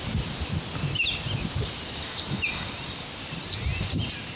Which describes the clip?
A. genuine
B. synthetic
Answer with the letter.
A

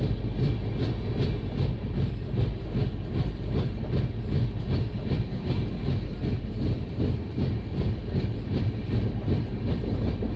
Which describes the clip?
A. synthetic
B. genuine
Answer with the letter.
B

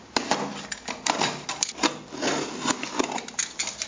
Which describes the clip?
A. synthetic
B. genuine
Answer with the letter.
B